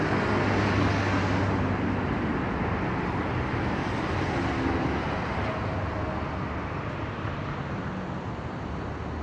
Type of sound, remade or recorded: recorded